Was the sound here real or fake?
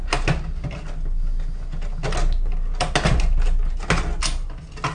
real